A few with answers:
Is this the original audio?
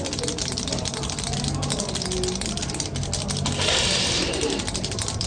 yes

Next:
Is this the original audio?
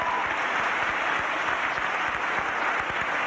yes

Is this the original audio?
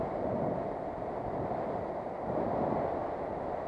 yes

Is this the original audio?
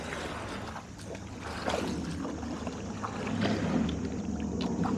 yes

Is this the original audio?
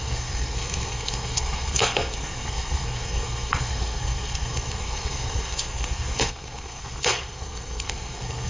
no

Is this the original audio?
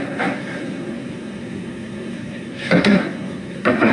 no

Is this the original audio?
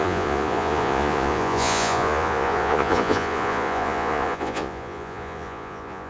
no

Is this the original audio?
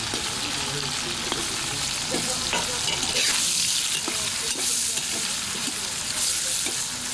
yes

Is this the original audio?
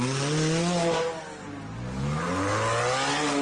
yes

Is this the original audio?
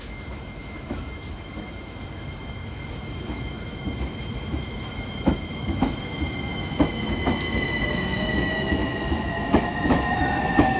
no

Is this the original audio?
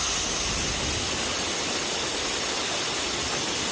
yes